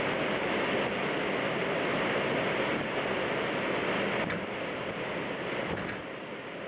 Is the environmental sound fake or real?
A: real